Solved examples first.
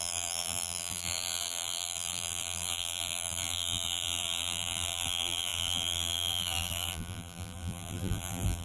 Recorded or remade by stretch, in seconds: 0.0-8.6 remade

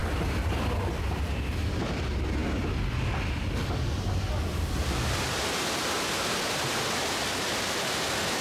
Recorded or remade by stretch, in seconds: 0.0-8.4 recorded

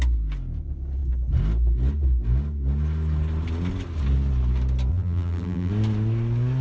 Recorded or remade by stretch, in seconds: 0.0-4.9 recorded; 4.9-5.7 remade; 5.7-6.6 recorded

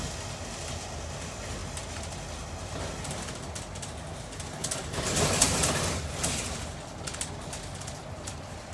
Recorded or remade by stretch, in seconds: 0.0-4.6 recorded; 4.6-5.6 remade; 5.6-8.7 recorded